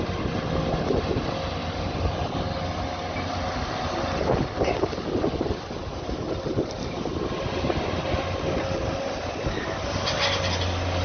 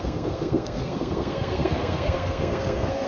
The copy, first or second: second